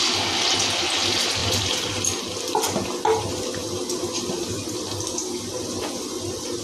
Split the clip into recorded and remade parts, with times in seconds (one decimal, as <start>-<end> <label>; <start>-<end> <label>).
0.0-1.4 recorded; 1.4-2.2 remade; 2.2-3.6 recorded; 3.6-6.6 remade